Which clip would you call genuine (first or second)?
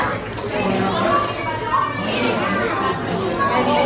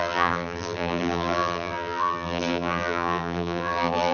first